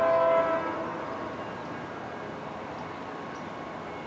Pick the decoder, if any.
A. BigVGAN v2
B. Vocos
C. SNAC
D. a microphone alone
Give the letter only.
D